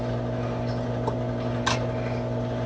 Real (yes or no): yes